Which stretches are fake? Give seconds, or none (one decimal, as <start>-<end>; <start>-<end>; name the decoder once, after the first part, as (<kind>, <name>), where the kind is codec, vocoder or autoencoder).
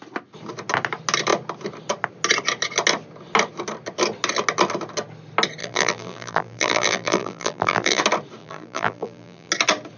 5.6-8.0 (vocoder, BigVGAN v2); 8.4-9.5